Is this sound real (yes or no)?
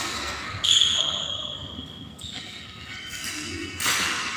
no